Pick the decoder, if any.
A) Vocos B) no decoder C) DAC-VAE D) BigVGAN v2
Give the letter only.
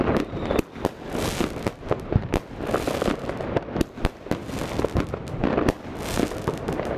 B